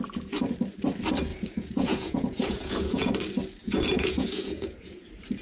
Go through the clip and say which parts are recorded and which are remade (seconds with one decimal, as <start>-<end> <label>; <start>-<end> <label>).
0.0-1.3 recorded; 1.3-3.1 remade; 3.1-3.6 recorded; 3.6-5.0 remade; 5.0-5.4 recorded